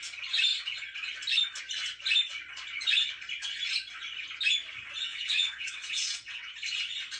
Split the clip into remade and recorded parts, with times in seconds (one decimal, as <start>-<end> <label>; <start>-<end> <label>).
0.0-5.1 recorded; 5.1-6.5 remade; 6.5-7.2 recorded